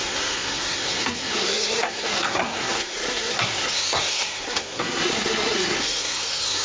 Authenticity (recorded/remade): remade